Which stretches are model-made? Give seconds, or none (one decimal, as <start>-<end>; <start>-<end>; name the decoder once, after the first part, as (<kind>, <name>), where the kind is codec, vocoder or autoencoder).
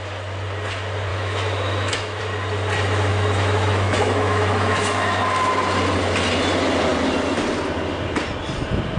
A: 1.1-2.2 (autoencoder, DAC-VAE); 3.1-5.2